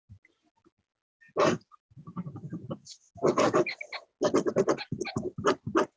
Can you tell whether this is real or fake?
real